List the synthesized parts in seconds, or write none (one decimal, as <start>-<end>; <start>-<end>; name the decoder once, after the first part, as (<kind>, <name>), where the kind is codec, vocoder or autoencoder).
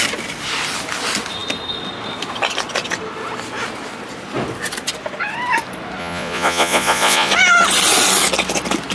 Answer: 6.0-7.3 (vocoder, Vocos)